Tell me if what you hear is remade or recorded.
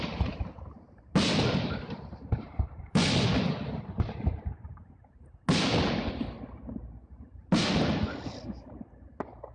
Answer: recorded